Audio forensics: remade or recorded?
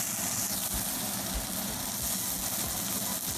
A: recorded